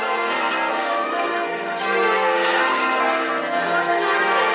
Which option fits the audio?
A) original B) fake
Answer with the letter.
B